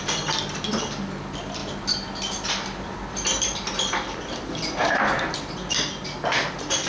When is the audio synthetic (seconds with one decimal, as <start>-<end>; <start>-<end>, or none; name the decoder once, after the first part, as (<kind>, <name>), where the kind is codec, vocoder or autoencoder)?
none